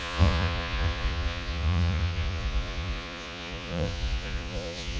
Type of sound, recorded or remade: remade